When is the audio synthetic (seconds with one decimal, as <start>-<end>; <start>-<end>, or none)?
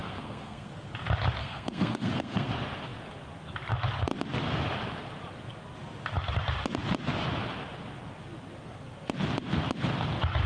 0.0-0.7; 1.4-2.5